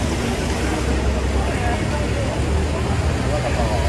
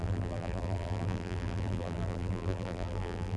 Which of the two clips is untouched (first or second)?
first